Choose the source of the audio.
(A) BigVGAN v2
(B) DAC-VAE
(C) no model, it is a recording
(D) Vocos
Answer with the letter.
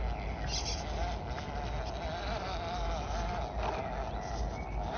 C